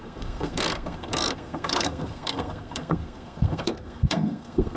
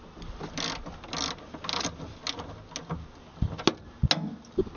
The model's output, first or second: first